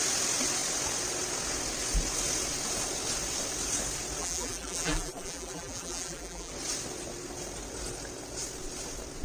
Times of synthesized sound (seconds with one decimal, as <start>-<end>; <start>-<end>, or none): 4.2-6.5